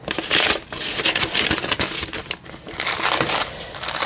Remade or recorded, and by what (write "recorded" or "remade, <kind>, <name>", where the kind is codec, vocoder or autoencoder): recorded